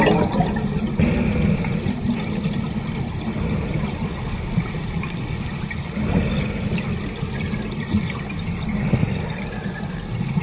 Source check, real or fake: real